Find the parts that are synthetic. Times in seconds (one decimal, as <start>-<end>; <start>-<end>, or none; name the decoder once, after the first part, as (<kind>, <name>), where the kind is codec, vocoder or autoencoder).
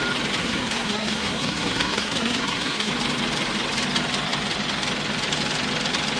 0.4-2.9 (codec, SNAC)